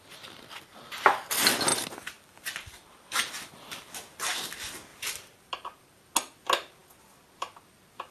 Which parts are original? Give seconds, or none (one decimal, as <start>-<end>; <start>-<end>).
0.0-1.7; 3.9-4.9; 5.8-8.1